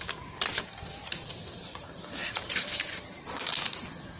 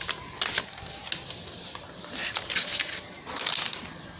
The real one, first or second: second